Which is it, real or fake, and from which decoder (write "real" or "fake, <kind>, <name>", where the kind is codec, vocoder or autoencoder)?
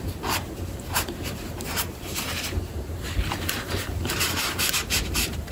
fake, vocoder, BigVGAN v2